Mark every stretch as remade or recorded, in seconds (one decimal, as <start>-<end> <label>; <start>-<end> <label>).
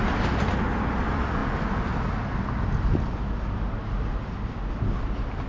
0.0-5.5 recorded